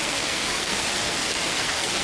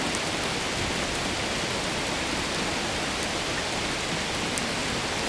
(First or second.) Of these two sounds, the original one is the second